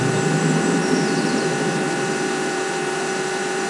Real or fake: fake